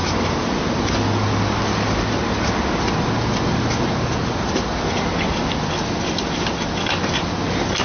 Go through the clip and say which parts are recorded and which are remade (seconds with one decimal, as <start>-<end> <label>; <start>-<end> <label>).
0.0-7.8 recorded